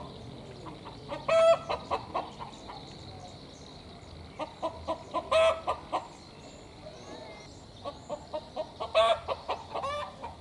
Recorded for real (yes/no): yes